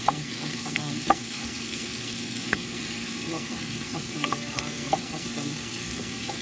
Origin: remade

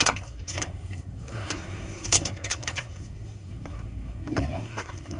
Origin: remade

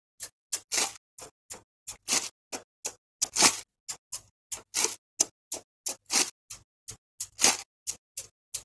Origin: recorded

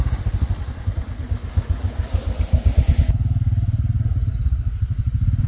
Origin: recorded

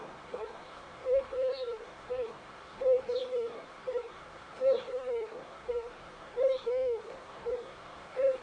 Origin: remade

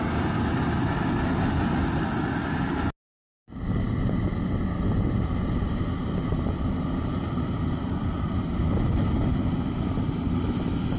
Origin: recorded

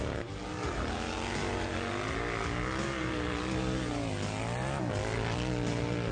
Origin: recorded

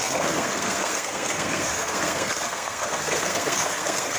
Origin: remade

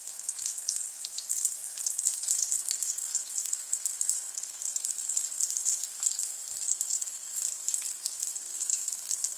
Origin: remade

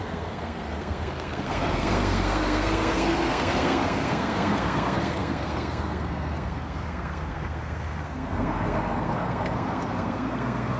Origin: remade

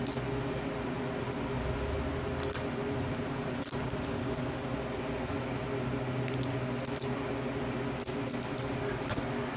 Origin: recorded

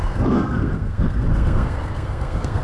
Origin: remade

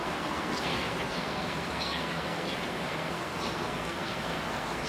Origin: remade